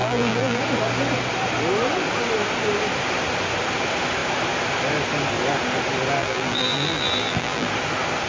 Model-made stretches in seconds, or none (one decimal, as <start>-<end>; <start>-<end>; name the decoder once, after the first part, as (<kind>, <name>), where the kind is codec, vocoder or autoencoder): 0.0-0.6 (vocoder, BigVGAN v2); 6.2-7.7